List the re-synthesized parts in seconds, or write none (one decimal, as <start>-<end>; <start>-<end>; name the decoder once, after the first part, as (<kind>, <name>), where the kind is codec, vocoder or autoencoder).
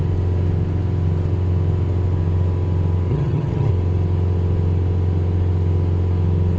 3.1-3.7 (vocoder, HiFi-GAN)